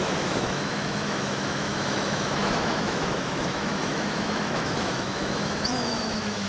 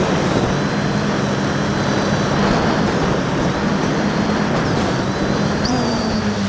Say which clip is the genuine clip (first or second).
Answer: second